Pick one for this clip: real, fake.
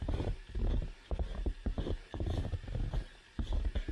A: real